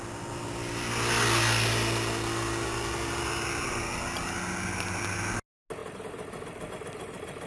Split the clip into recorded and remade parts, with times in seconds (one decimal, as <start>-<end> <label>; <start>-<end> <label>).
0.0-7.5 recorded